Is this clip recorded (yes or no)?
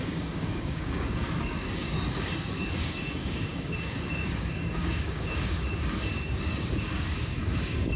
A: no